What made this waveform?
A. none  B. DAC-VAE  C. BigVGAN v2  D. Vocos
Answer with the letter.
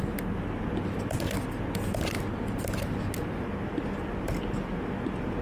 A